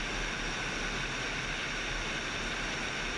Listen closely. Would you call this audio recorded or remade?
recorded